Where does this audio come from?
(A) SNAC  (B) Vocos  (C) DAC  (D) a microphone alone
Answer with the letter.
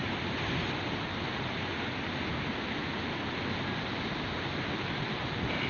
D